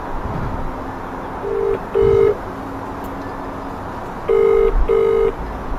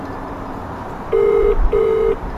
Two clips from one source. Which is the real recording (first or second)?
first